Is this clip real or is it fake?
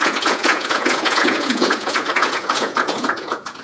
fake